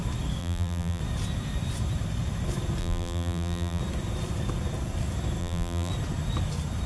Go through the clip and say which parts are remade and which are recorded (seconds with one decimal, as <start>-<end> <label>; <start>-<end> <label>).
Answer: 0.0-0.4 recorded; 0.4-1.0 remade; 1.0-2.8 recorded; 2.8-3.8 remade; 3.8-5.4 recorded; 5.4-5.9 remade; 5.9-6.9 recorded